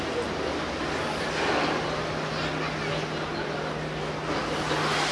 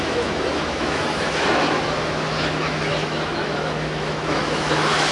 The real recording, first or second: first